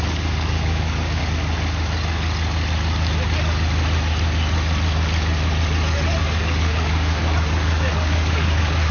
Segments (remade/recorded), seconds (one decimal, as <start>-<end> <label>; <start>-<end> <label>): 0.0-1.2 remade; 1.2-6.2 recorded; 6.2-8.9 remade

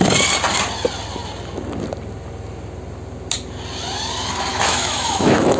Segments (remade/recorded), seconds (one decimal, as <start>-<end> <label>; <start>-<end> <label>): 0.0-4.5 recorded; 4.5-5.6 remade